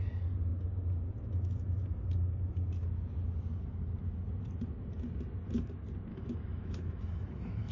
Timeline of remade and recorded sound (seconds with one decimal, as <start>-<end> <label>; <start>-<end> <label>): 0.0-6.1 recorded; 6.1-7.7 remade